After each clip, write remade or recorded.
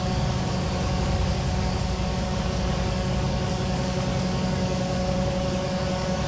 remade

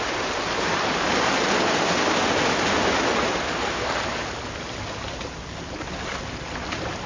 recorded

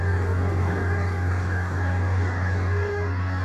remade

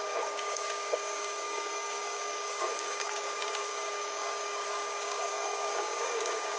remade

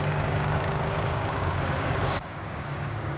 remade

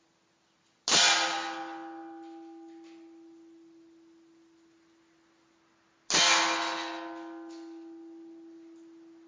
recorded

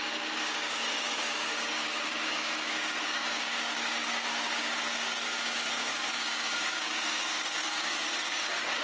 remade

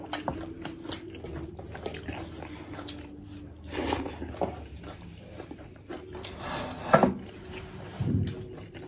recorded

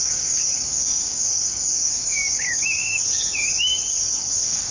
remade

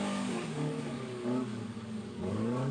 remade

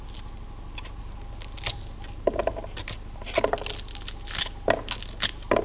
recorded